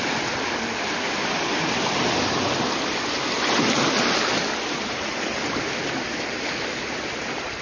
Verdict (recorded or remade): recorded